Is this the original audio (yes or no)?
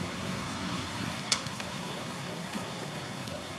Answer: no